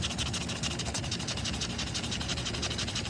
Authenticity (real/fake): real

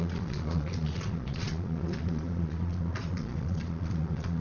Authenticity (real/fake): fake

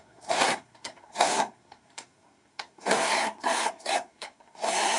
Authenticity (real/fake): fake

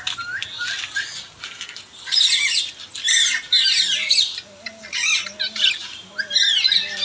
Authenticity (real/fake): real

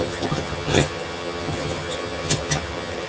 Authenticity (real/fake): fake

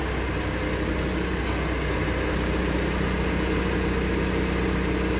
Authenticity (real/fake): real